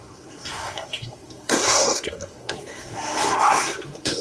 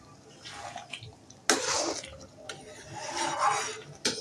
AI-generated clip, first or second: first